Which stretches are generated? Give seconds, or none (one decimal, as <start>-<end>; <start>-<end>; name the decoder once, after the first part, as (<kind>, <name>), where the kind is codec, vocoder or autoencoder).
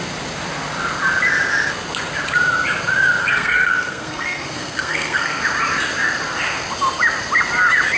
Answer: 3.2-5.4 (codec, SNAC)